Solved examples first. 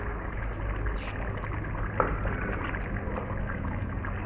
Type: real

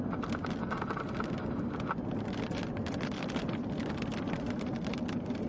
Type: real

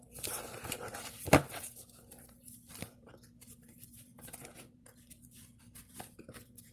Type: fake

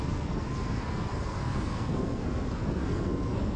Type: fake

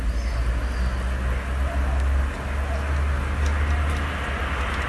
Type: real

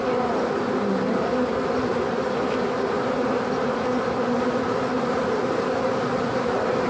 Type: real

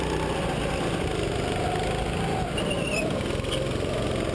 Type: real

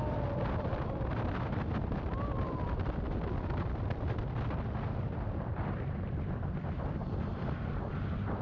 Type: fake